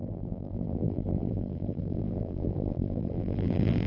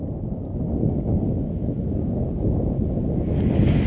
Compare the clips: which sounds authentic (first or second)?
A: second